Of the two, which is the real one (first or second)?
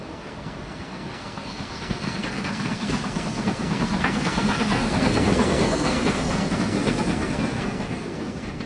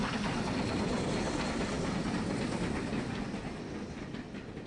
second